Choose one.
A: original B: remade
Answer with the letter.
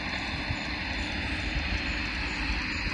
A